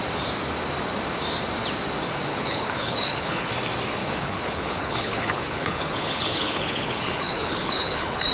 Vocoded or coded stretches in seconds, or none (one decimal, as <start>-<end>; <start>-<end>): 2.3-3.5; 4.0-8.3